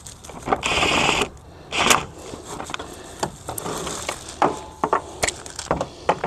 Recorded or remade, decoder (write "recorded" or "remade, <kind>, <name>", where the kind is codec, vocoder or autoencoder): recorded